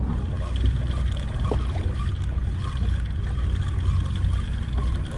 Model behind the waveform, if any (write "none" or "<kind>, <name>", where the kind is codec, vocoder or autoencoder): none